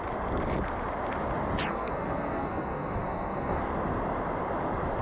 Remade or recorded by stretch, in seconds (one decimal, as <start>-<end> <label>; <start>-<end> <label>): 0.0-1.7 recorded; 1.7-3.6 remade; 3.6-5.0 recorded

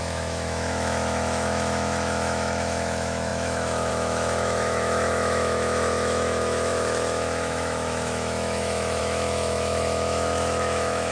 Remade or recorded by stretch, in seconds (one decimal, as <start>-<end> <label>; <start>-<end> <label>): 0.0-11.1 remade

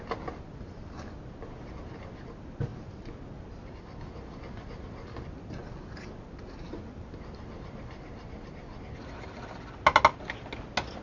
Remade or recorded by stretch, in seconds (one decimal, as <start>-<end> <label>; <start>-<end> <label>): 0.0-11.0 recorded

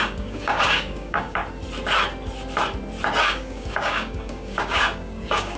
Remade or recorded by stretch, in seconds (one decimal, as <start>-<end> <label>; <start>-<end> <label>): 0.0-1.4 remade; 1.4-3.2 recorded; 3.2-5.6 remade